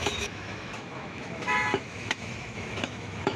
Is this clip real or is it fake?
fake